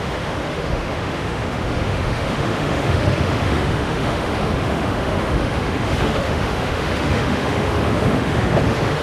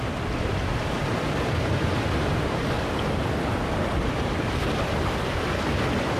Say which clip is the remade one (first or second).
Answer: first